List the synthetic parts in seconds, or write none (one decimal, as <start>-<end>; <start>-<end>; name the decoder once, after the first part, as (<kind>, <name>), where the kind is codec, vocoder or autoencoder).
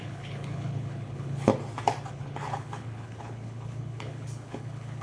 0.0-1.5 (codec, HILCodec); 2.1-5.0